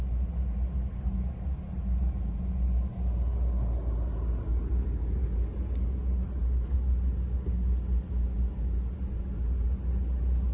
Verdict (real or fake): real